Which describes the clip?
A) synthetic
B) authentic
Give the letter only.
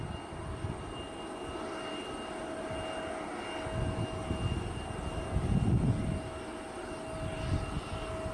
B